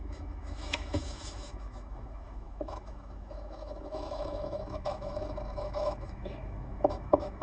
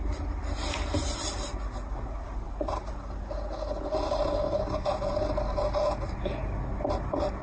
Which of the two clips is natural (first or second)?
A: second